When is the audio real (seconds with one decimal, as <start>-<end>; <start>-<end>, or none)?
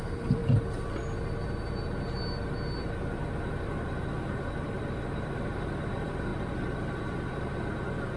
0.4-4.4; 6.3-8.2